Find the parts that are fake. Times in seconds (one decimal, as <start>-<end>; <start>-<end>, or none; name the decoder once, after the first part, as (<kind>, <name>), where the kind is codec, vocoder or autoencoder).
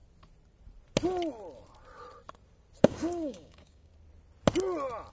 2.8-3.9 (codec, DAC)